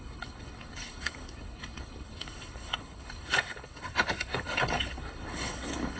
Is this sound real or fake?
fake